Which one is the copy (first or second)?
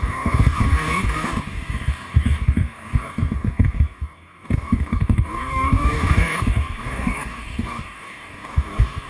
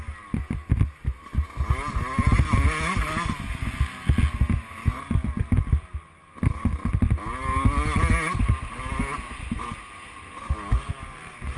first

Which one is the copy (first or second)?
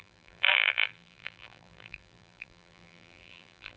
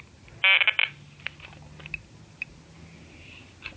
first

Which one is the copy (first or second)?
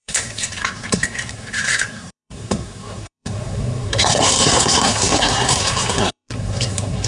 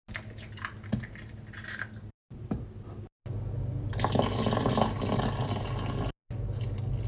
first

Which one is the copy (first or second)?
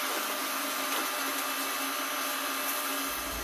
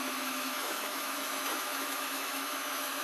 second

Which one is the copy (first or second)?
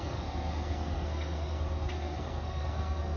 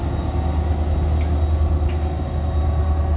first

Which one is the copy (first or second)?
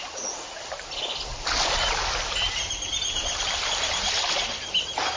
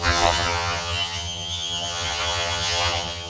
second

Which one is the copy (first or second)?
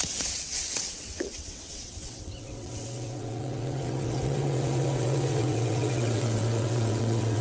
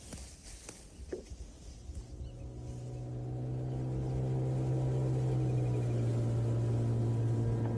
first